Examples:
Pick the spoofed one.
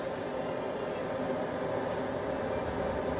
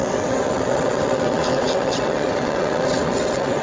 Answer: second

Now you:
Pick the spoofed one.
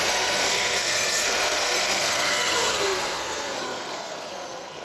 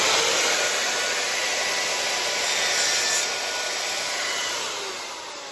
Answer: first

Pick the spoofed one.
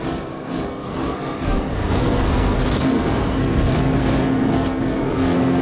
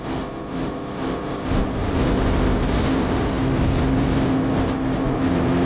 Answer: first